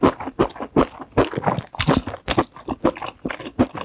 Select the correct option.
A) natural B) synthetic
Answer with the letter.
A